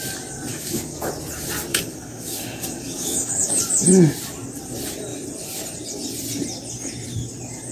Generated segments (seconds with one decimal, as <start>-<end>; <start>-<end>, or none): 0.5-1.1; 1.7-3.6